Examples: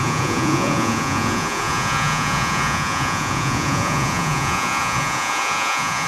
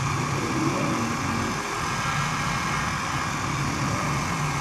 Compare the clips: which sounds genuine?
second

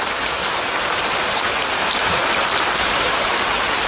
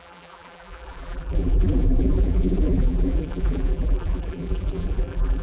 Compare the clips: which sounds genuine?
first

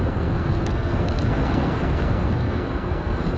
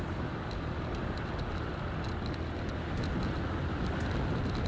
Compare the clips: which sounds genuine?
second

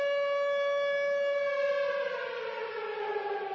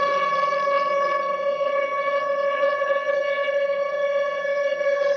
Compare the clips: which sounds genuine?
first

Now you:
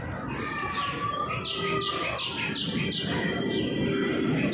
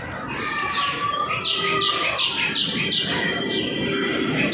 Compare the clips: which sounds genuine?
first